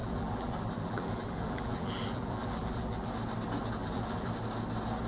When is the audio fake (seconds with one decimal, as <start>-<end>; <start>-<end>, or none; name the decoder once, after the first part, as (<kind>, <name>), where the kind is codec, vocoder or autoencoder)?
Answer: 0.0-3.1 (vocoder, BigVGAN v2); 3.8-4.3